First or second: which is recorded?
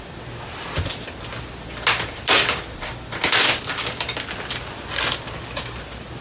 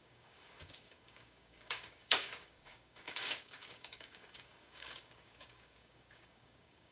first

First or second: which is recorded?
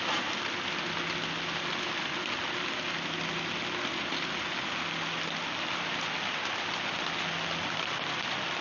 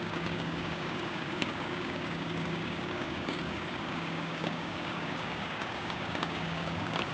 first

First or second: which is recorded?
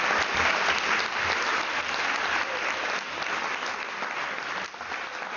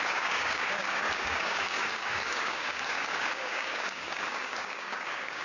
first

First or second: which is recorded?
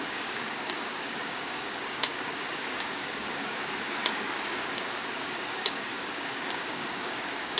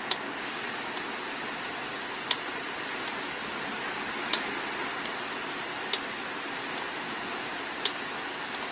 second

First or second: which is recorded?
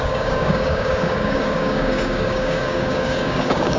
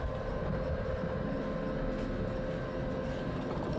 second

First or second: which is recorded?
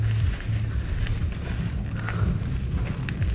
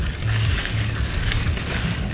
first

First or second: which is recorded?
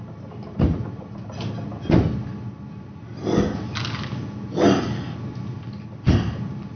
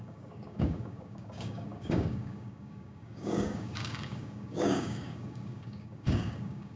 first